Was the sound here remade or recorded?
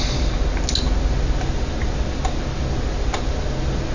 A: recorded